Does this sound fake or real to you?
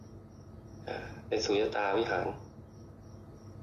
real